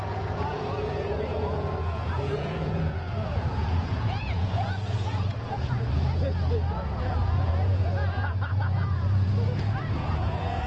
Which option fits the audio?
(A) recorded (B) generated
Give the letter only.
B